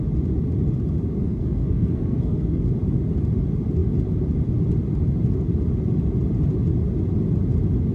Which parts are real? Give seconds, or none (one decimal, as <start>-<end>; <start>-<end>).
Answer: 0.0-1.2; 2.6-7.9